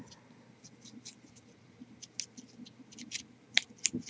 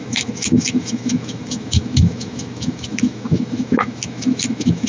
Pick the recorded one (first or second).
first